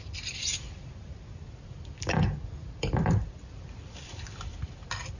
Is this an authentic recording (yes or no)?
no